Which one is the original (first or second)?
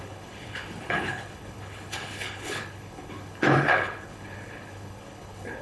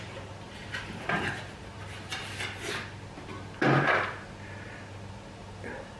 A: second